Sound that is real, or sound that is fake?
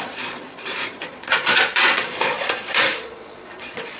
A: fake